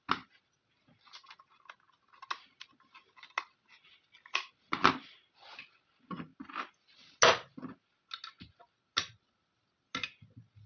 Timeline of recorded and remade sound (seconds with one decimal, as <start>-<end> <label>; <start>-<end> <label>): 0.0-10.7 recorded